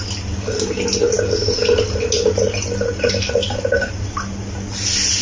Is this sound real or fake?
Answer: real